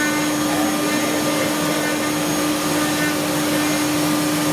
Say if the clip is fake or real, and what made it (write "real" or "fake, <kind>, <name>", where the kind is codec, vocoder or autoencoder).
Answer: real